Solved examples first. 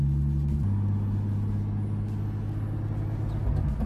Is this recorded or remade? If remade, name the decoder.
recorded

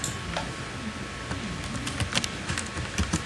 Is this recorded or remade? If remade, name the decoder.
recorded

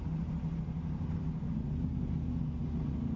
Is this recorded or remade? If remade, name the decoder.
recorded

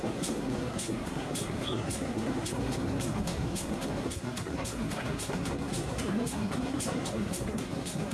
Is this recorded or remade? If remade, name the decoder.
remade, codec, SNAC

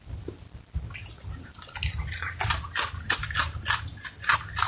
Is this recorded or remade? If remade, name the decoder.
recorded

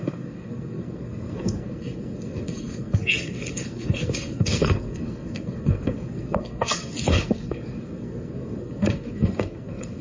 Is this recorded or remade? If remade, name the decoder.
remade, codec, SNAC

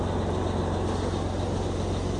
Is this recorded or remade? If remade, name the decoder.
recorded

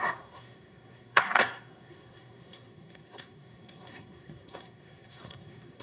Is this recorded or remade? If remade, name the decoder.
remade, codec, SNAC